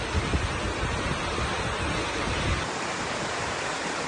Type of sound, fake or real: real